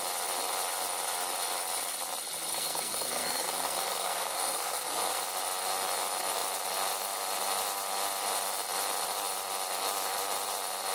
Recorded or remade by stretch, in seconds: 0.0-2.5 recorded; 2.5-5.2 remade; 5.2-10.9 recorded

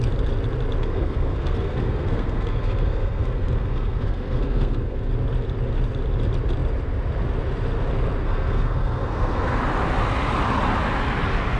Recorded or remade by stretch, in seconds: 0.0-0.8 recorded; 0.8-5.1 remade; 5.1-8.2 recorded; 8.2-9.6 remade; 9.6-11.6 recorded

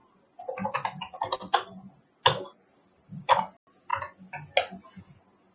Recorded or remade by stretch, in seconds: 0.0-5.5 recorded

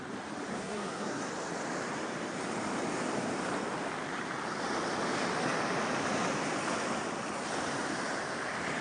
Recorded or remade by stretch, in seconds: 0.0-0.5 recorded; 0.5-1.3 remade; 1.3-8.8 recorded